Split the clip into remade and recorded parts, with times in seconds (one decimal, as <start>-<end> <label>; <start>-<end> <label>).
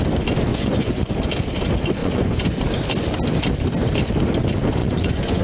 0.0-0.5 recorded; 0.5-1.1 remade; 1.1-2.0 recorded; 2.0-2.6 remade; 2.6-4.8 recorded; 4.8-5.4 remade